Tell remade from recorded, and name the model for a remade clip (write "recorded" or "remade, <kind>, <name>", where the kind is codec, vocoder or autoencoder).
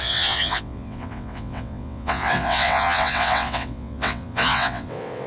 remade, vocoder, WaveNeXt